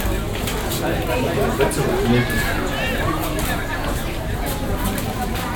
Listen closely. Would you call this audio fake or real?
real